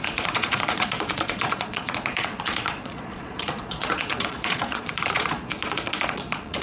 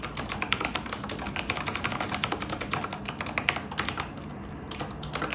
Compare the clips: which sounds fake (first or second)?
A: first